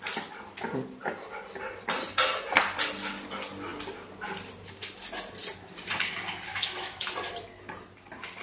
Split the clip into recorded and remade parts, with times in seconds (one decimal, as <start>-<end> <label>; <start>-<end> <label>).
0.0-6.5 recorded; 6.5-7.1 remade; 7.1-8.4 recorded